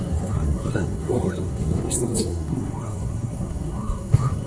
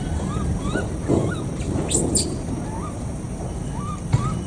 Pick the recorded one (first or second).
second